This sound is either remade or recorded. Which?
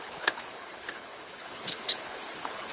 remade